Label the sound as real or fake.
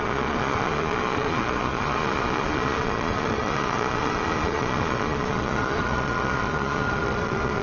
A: fake